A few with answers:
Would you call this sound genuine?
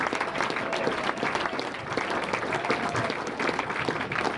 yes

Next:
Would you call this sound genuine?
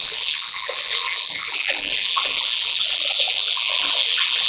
no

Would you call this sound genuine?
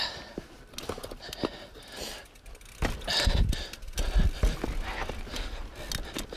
yes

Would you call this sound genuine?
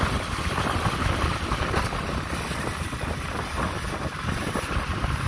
yes